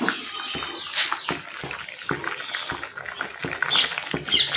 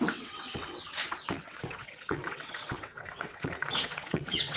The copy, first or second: second